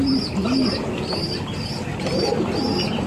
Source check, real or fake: real